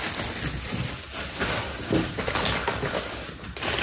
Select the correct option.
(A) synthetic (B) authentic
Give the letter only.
B